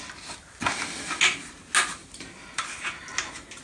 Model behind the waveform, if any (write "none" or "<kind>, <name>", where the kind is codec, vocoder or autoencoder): none